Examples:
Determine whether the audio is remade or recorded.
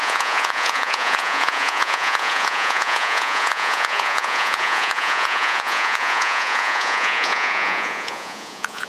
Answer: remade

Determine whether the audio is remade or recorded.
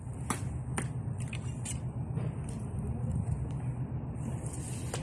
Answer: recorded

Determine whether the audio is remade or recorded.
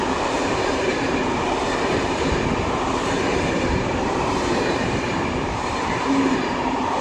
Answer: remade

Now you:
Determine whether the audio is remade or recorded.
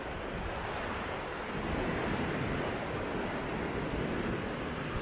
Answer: recorded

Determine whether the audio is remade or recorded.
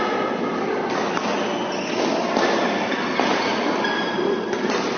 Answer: recorded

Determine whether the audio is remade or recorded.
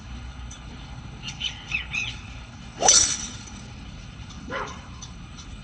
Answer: remade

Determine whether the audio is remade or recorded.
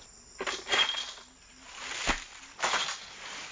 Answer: recorded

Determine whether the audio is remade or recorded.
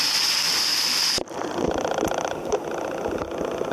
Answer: recorded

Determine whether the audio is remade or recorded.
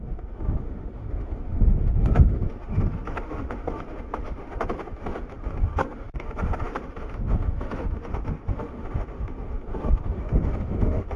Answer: remade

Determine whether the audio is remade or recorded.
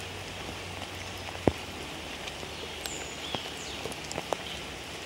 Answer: recorded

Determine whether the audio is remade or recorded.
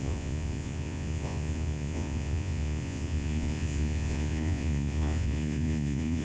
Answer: remade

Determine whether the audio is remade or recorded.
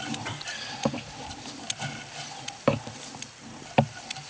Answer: recorded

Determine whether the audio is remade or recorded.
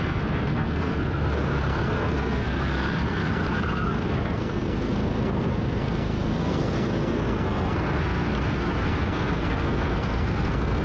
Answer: remade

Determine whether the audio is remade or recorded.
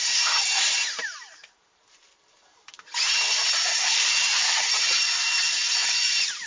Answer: remade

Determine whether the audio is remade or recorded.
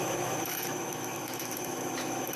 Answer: remade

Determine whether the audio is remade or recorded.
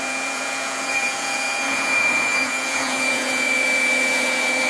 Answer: remade